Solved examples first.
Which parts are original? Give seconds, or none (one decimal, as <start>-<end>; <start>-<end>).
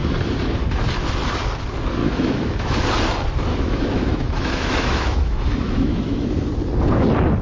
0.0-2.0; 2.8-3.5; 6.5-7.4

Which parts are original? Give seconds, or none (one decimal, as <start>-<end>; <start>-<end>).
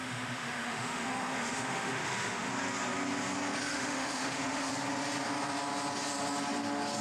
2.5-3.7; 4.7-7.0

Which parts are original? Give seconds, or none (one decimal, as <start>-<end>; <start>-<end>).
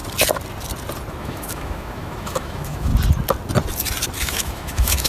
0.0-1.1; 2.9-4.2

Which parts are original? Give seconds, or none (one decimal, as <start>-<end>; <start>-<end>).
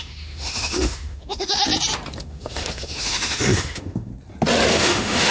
1.6-2.2; 4.1-4.7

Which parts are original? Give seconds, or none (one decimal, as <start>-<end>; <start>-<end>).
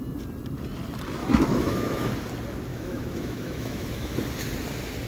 0.0-1.2; 2.1-2.7; 4.2-5.1